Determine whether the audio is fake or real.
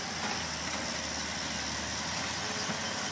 real